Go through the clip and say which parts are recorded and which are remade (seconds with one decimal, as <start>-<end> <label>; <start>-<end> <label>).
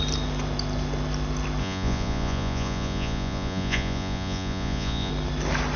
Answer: 0.0-1.6 recorded; 1.6-5.1 remade; 5.1-5.8 recorded